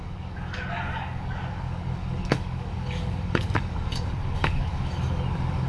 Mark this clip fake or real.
fake